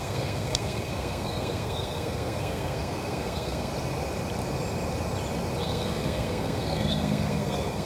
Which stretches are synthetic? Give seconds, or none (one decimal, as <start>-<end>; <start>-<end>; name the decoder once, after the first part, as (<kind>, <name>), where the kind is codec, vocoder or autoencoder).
0.0-3.7 (codec, SNAC); 5.6-7.9